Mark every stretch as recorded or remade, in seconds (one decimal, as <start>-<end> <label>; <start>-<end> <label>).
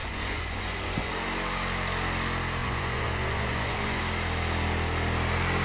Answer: 0.0-1.1 remade; 1.1-2.6 recorded; 2.6-4.0 remade; 4.0-5.6 recorded